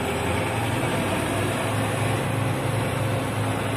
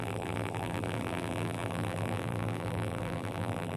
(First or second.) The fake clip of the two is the second